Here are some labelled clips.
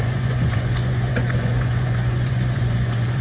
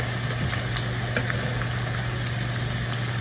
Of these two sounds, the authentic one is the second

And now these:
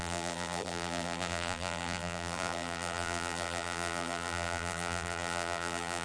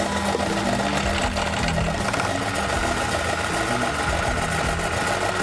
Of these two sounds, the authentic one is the second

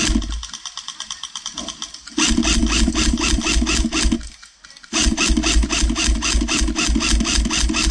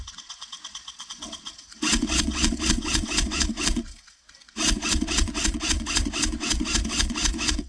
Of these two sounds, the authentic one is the first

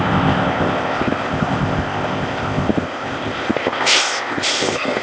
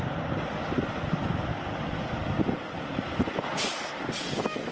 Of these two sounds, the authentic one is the second